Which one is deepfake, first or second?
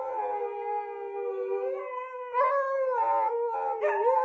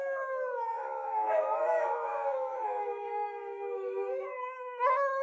second